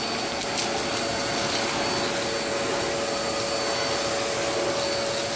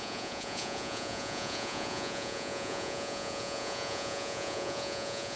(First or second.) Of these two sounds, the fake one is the second